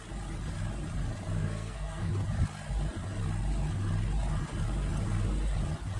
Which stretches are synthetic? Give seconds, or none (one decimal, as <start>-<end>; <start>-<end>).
1.4-2.1